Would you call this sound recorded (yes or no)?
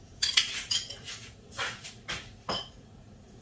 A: no